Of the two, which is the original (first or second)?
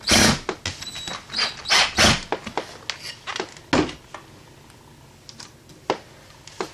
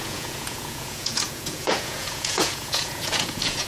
first